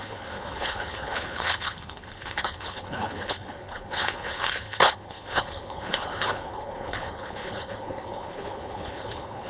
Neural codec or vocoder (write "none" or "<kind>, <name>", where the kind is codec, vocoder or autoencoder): codec, HILCodec